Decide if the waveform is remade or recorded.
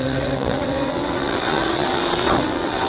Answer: remade